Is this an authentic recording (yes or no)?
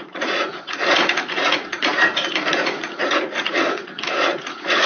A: no